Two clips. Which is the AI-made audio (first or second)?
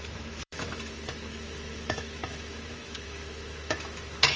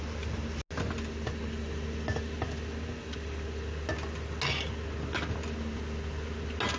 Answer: first